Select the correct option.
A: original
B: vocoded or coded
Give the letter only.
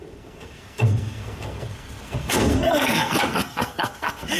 B